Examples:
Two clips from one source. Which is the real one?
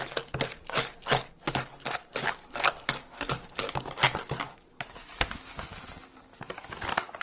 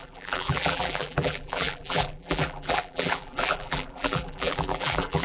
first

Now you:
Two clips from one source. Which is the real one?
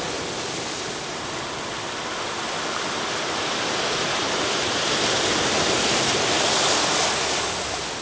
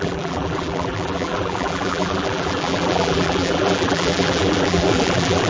first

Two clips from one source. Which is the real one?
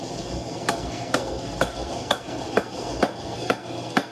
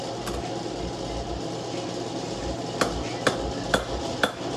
second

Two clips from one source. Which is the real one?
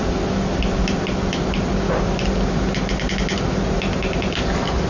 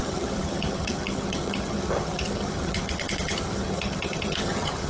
first